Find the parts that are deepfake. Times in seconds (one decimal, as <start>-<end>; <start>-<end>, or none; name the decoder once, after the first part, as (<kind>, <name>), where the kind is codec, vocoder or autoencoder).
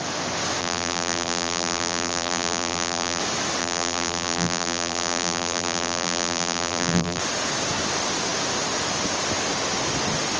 0.6-3.2 (vocoder, BigVGAN v2); 3.6-7.2